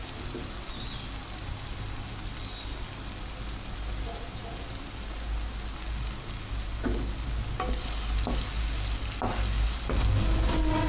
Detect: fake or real real